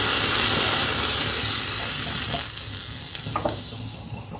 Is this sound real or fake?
real